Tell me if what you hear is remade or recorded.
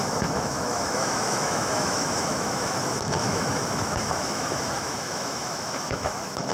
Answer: remade